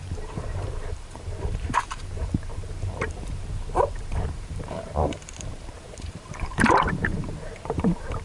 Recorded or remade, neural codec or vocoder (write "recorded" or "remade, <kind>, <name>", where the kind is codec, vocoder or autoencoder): remade, vocoder, BigVGAN v2